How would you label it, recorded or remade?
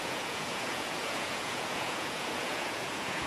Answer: remade